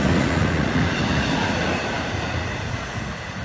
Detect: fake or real fake